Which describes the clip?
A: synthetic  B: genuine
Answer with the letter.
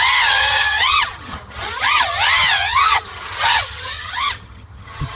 A